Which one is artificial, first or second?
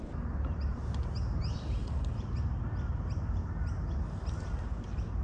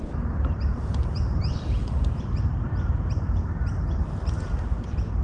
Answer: second